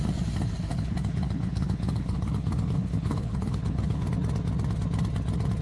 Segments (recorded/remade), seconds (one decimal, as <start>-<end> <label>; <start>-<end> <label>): 0.0-0.7 recorded; 0.7-4.1 remade; 4.1-5.6 recorded